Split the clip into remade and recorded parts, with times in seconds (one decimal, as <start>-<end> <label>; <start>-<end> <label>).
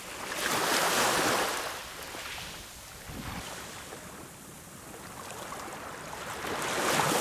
0.0-7.2 recorded